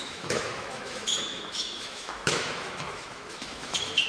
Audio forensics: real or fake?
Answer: fake